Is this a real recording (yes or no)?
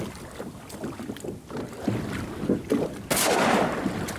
yes